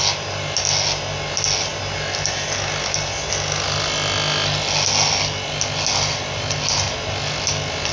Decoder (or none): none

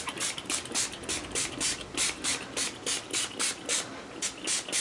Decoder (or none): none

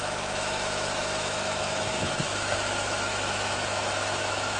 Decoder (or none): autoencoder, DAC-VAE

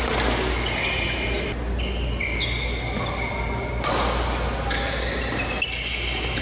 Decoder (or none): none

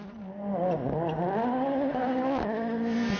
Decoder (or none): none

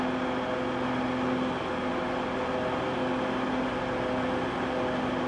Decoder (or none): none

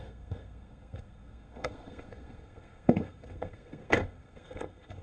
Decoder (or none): codec, SNAC